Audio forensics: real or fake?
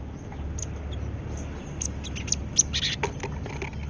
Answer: real